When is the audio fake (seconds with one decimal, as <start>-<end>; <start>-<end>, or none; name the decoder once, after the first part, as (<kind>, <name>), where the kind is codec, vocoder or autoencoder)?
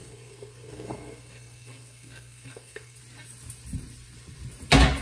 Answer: 0.0-3.0 (codec, SNAC)